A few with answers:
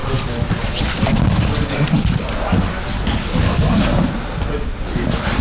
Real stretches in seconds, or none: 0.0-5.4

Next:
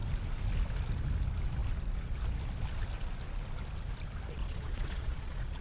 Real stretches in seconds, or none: 0.0-4.4

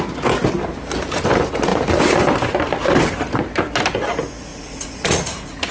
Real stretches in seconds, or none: 0.0-4.5

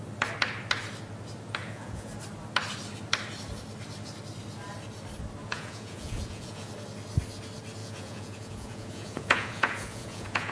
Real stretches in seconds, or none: 0.0-1.6; 2.1-5.4; 6.7-7.8